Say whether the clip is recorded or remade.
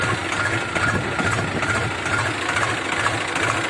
recorded